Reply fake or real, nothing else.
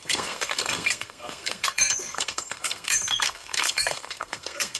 fake